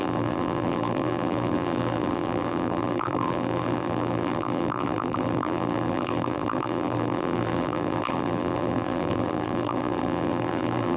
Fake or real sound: fake